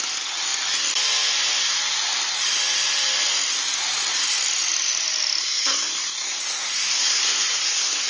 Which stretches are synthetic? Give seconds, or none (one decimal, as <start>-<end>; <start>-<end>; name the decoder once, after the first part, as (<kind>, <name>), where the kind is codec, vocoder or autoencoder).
5.4-8.1 (codec, SNAC)